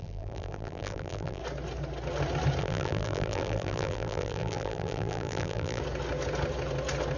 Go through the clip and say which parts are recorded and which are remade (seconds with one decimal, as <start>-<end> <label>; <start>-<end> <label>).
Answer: 0.0-1.4 remade; 1.4-2.6 recorded; 2.6-5.8 remade; 5.8-7.2 recorded